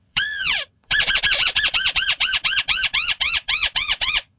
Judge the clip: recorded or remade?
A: remade